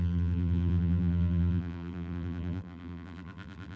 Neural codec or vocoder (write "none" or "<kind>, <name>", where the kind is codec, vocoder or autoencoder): vocoder, BigVGAN v2